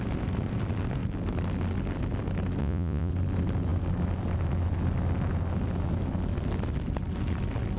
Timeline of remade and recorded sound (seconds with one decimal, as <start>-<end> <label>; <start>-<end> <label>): 0.0-2.6 recorded; 2.6-3.1 remade; 3.1-7.8 recorded